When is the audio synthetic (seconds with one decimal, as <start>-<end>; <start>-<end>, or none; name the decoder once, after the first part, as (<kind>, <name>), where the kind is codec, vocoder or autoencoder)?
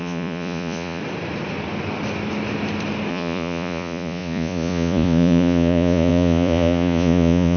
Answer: 0.0-1.0 (vocoder, Vocos); 3.1-7.6